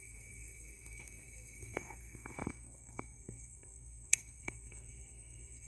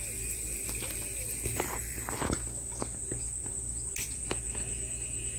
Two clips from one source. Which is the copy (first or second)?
first